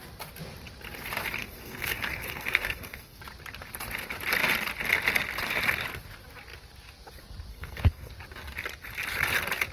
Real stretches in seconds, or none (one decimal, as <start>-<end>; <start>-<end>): 0.0-1.4; 3.2-7.5; 8.1-9.7